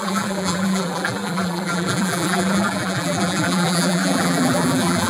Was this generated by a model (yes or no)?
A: yes